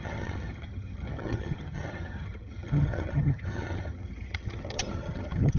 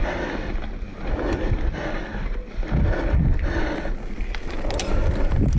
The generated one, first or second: first